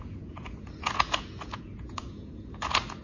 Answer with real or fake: fake